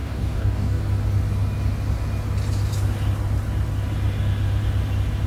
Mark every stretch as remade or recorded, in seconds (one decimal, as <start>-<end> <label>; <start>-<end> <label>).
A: 0.0-0.8 remade; 0.8-5.3 recorded

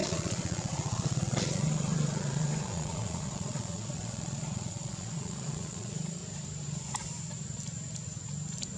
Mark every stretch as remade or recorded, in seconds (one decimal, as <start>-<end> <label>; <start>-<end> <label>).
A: 0.0-6.2 remade; 6.2-8.8 recorded

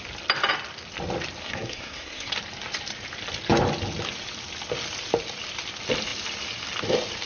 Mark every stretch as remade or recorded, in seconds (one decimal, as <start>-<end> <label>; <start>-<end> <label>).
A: 0.0-1.4 recorded; 1.4-2.3 remade; 2.3-7.3 recorded